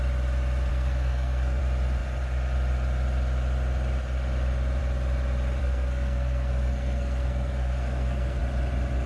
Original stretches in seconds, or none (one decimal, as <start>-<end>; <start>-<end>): 0.0-0.7; 1.6-5.6; 8.4-9.1